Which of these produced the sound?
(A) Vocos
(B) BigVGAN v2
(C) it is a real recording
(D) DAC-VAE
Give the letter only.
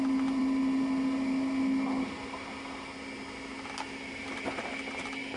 C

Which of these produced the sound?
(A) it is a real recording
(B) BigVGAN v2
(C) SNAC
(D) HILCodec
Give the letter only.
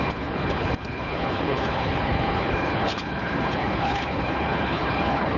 D